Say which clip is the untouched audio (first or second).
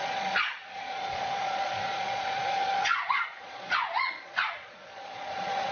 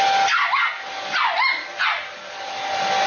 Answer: second